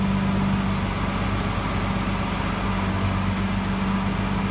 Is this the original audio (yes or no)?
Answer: yes